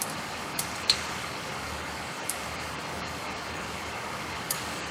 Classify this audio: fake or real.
fake